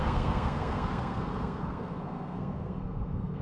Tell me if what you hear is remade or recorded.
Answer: remade